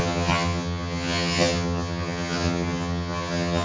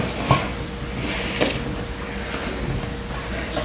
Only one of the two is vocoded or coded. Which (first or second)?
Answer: first